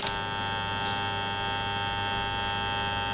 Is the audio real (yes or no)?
yes